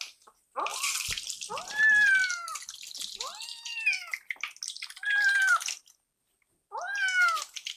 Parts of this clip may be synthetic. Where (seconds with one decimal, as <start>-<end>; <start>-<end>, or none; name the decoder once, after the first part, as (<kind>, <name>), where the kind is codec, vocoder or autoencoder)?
none